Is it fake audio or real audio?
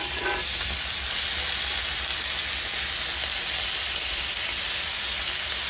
real